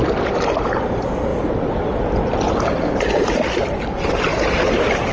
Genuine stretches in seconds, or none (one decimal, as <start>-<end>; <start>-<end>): 0.0-5.1